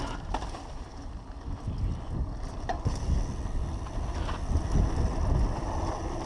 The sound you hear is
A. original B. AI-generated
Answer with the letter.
A